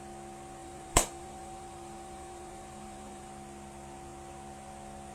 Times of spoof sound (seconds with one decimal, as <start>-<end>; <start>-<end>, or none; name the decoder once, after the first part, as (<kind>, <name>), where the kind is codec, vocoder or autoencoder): 0.6-3.3 (vocoder, BigVGAN v2)